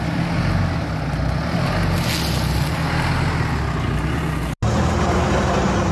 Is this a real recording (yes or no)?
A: yes